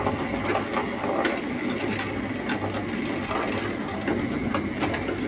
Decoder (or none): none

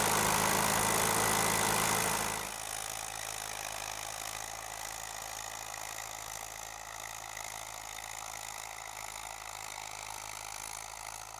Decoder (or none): none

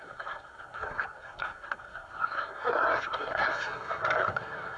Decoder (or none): codec, SNAC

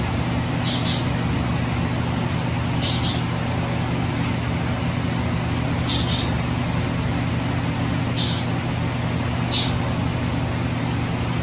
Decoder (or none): none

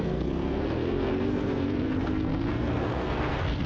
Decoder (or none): codec, SNAC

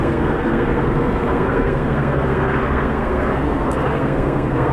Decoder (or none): codec, SNAC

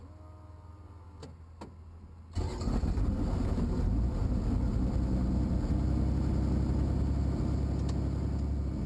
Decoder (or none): none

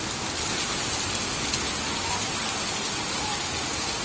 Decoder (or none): none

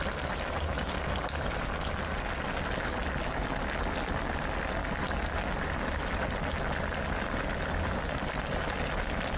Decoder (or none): none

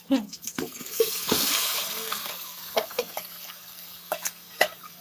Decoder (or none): codec, SNAC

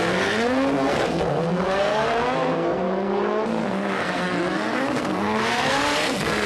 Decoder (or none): codec, SNAC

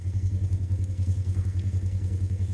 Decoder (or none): codec, SNAC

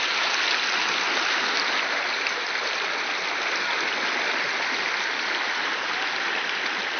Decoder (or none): none